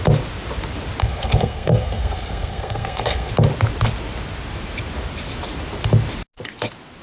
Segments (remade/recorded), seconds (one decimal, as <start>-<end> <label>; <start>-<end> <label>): 0.0-1.0 recorded; 1.0-3.3 remade; 3.3-7.0 recorded